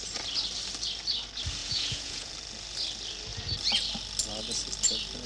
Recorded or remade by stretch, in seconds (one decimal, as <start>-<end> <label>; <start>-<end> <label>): 0.0-1.6 recorded; 1.6-2.3 remade; 2.3-5.3 recorded